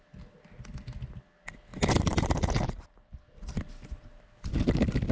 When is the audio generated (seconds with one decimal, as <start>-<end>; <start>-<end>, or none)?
none